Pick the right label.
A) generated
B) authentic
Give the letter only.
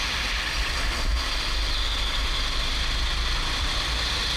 B